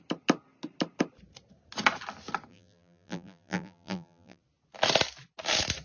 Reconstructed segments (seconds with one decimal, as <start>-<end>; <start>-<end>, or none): 2.5-4.4